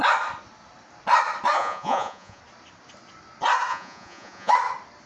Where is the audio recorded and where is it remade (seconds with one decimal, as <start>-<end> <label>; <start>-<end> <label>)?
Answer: 0.0-1.6 recorded; 1.6-2.4 remade; 2.4-3.7 recorded; 3.7-4.5 remade; 4.5-5.1 recorded